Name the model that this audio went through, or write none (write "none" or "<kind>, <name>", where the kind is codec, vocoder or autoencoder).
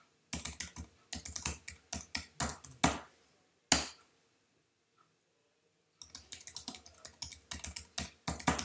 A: none